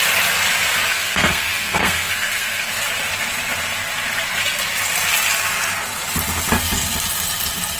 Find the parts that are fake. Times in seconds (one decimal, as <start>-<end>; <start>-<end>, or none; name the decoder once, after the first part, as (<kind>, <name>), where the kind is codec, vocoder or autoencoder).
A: 0.9-2.7 (codec, SNAC)